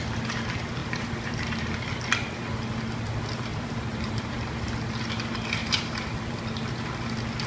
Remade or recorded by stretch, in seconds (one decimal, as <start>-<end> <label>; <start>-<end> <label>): 0.0-0.8 recorded; 0.8-1.7 remade; 1.7-3.5 recorded; 3.5-4.7 remade; 4.7-5.6 recorded; 5.6-6.4 remade; 6.4-7.5 recorded